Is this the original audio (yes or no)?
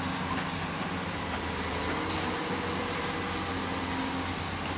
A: yes